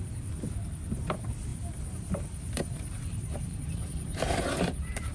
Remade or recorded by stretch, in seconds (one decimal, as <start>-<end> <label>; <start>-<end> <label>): 0.0-5.1 remade